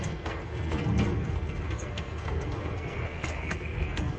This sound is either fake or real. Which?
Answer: fake